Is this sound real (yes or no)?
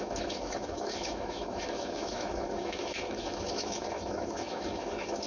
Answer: no